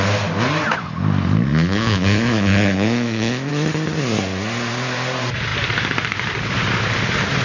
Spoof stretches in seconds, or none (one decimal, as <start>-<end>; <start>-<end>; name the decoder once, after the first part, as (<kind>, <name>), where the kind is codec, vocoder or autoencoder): 1.5-3.5 (autoencoder, DAC-VAE)